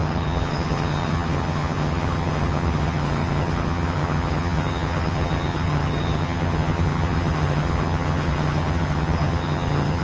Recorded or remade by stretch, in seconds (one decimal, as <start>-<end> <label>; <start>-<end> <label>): 0.0-10.0 remade